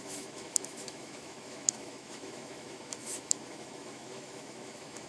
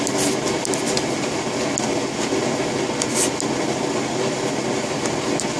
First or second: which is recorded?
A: second